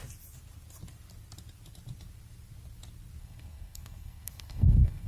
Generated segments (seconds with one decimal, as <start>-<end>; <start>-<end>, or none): 3.2-5.1